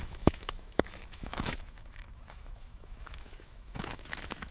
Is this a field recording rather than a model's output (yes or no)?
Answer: no